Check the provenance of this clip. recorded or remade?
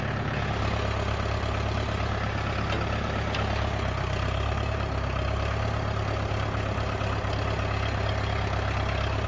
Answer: recorded